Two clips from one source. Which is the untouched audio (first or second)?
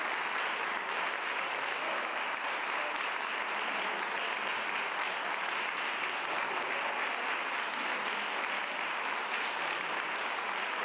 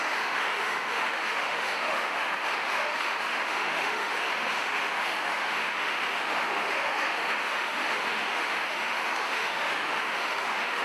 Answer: first